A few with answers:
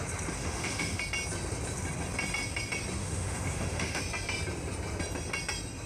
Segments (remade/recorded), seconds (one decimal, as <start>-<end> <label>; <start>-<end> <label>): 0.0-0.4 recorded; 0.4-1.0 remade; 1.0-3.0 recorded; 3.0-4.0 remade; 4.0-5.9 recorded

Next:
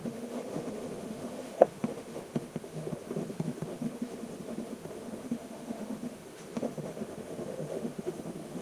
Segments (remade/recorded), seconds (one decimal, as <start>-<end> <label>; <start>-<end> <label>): 0.0-8.6 remade

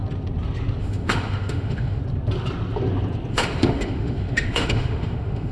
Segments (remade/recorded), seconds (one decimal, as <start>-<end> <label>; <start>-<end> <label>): 0.0-0.8 recorded; 0.8-2.0 remade; 2.0-3.3 recorded; 3.3-5.5 remade

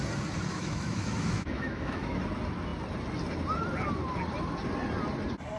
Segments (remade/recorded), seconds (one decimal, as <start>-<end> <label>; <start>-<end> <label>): 0.0-0.5 recorded; 0.5-2.2 remade; 2.2-5.6 recorded